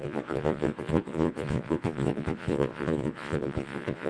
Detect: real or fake fake